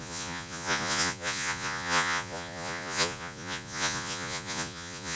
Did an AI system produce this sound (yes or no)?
yes